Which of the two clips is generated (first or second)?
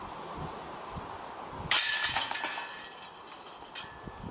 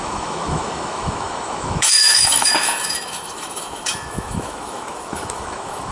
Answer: second